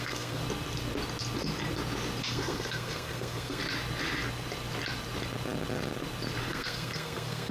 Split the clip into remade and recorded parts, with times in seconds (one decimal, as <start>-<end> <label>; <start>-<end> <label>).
0.0-0.4 remade; 0.4-2.3 recorded; 2.3-3.6 remade; 3.6-6.5 recorded; 6.5-7.5 remade